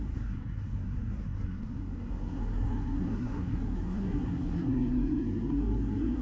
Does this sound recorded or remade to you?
remade